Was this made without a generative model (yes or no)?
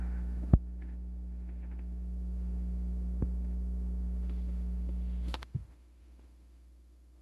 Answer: no